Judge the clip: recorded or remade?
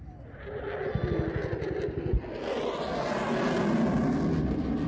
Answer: recorded